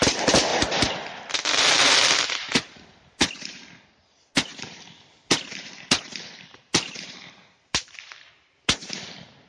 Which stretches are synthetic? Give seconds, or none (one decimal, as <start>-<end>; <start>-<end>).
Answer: 0.5-1.6; 4.5-8.3